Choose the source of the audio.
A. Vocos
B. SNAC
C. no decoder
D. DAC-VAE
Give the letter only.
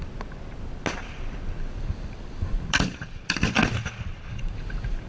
C